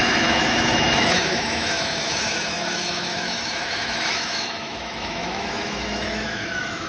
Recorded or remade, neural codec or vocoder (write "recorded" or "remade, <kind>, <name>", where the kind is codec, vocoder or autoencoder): remade, autoencoder, DAC-VAE